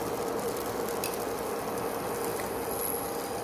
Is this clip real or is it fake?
real